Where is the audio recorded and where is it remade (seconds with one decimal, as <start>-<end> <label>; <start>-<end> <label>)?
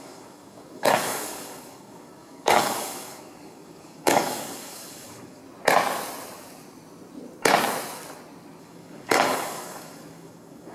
0.0-5.4 remade; 5.4-8.6 recorded; 8.6-10.7 remade